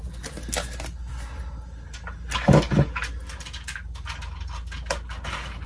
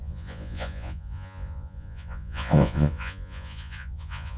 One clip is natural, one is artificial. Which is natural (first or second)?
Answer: first